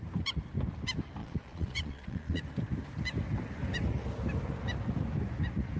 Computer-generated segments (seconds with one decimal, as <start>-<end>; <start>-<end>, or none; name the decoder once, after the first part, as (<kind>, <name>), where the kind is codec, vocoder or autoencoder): 1.2-2.4 (vocoder, Vocos)